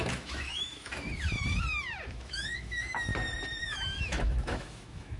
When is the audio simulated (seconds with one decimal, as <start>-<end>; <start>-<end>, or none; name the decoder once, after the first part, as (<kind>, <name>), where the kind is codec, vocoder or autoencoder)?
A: 0.0-0.9 (autoencoder, DAC-VAE); 2.1-3.1; 3.6-5.2